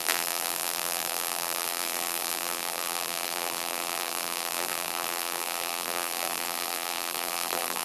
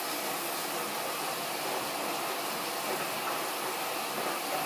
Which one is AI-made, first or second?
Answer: first